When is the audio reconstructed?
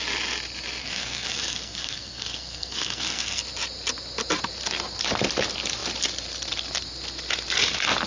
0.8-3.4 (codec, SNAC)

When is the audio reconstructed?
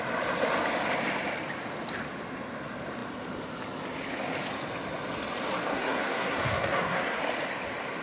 5.7-7.2 (codec, SNAC)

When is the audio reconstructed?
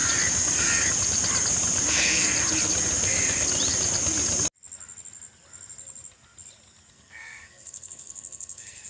1.9-2.3 (codec, SNAC); 6.9-8.9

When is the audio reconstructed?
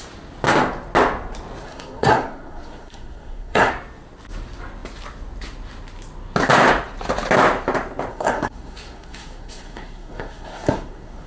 1.6-3.7 (codec, SNAC); 8.1-11.3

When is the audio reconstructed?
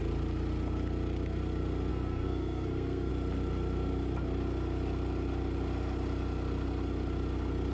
1.9-3.1 (codec, SNAC)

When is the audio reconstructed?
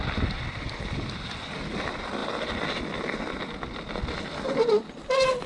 none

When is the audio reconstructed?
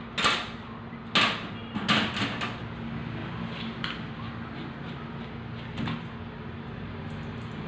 none